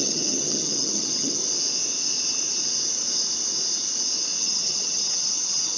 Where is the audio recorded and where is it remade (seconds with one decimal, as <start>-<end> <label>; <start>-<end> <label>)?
0.0-1.4 remade; 1.4-4.4 recorded; 4.4-5.8 remade